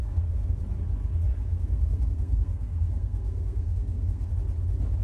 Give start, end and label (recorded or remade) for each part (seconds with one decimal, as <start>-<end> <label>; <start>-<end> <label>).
0.0-0.6 remade; 0.6-1.3 recorded; 1.3-4.3 remade; 4.3-5.0 recorded